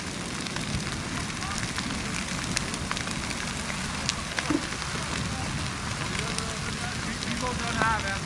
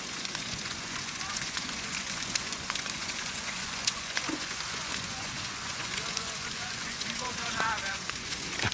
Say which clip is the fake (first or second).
second